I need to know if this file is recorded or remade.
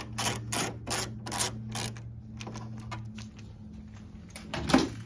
recorded